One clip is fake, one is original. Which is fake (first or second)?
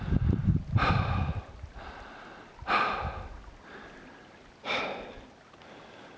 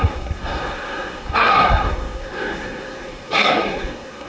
second